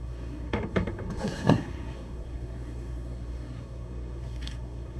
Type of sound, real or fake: fake